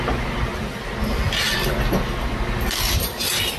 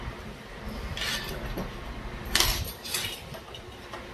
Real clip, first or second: first